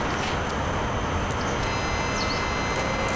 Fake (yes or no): no